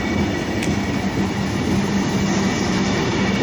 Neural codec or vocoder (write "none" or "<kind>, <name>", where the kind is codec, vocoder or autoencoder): none